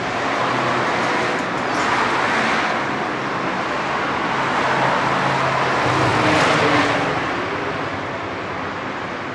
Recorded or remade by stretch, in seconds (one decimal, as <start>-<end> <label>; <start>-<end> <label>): 0.0-9.3 recorded